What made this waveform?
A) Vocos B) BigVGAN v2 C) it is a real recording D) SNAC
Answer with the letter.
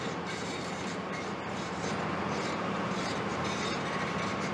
B